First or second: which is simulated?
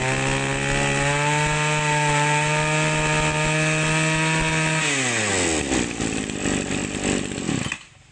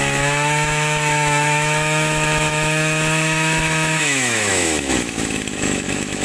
second